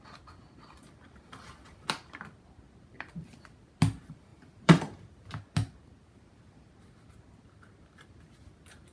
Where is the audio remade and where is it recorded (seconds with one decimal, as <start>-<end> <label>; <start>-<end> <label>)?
0.0-4.3 recorded; 4.3-5.3 remade; 5.3-8.9 recorded